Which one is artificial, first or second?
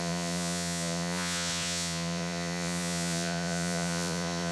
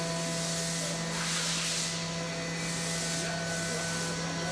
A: first